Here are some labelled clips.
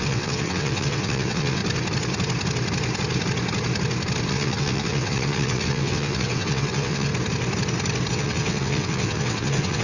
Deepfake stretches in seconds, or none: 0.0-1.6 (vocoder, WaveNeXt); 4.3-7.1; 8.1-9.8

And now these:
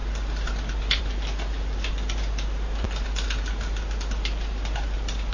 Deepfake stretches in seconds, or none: none